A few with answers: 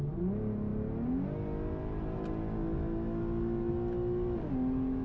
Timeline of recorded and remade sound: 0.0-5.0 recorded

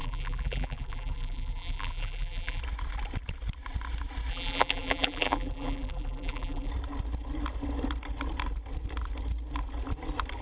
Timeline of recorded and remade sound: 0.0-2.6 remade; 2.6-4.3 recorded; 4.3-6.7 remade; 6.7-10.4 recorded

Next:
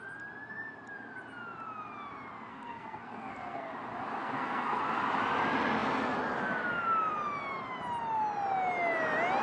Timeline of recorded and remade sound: 0.0-2.5 recorded; 2.5-3.7 remade; 3.7-4.2 recorded; 4.2-4.8 remade; 4.8-9.4 recorded